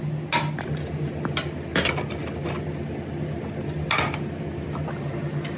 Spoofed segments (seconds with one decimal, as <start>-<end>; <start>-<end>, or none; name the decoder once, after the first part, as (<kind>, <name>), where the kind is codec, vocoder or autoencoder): none